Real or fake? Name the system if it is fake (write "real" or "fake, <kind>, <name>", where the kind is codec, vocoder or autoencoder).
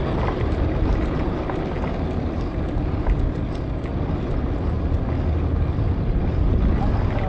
real